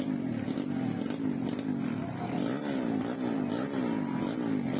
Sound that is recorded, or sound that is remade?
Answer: recorded